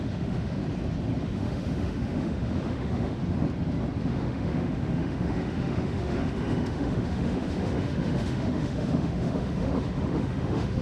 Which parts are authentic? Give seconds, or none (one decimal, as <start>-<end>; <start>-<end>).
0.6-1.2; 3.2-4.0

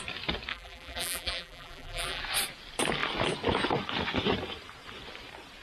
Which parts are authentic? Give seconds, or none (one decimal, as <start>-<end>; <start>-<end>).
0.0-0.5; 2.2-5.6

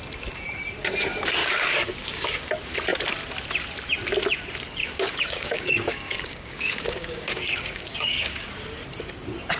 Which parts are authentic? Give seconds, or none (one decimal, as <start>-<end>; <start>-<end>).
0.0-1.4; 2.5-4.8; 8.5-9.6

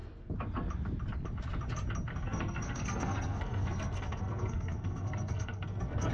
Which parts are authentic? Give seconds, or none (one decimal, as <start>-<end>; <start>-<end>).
0.0-2.1